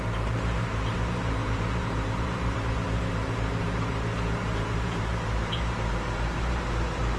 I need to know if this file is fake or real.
fake